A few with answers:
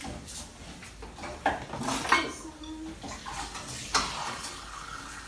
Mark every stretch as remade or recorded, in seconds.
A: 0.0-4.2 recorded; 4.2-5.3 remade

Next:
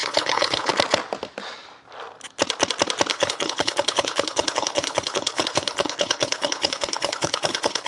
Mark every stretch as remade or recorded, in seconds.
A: 0.0-0.7 remade; 0.7-3.1 recorded; 3.1-7.9 remade

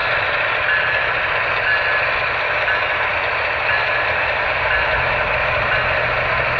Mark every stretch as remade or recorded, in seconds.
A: 0.0-6.6 recorded

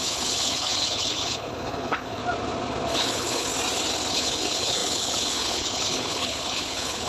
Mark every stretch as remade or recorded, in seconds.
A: 0.0-2.2 remade; 2.2-2.9 recorded; 2.9-3.5 remade; 3.5-4.1 recorded; 4.1-7.1 remade

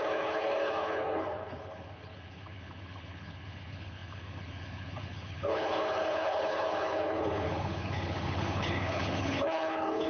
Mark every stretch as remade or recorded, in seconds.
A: 0.0-10.1 remade

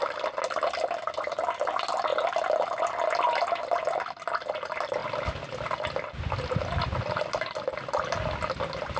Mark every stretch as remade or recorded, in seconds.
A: 0.0-9.0 recorded

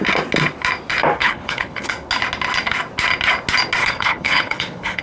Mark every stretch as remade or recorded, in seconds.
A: 0.0-1.2 recorded; 1.2-1.9 remade; 1.9-3.8 recorded; 3.8-5.0 remade